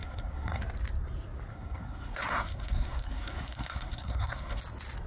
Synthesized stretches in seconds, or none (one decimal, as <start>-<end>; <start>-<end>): 0.0-0.6; 1.5-4.6